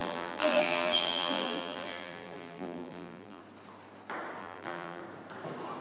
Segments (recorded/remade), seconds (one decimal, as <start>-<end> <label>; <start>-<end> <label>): 0.0-3.4 remade; 3.4-4.4 recorded; 4.4-5.0 remade; 5.0-5.8 recorded